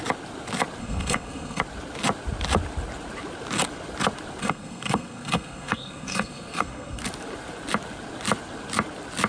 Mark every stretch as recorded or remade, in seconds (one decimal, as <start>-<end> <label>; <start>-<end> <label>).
0.0-0.8 recorded; 0.8-1.6 remade; 1.6-4.4 recorded; 4.4-7.0 remade; 7.0-9.3 recorded